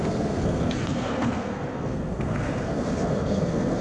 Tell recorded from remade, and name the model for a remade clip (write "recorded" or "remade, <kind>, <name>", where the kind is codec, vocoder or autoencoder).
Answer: remade, codec, SNAC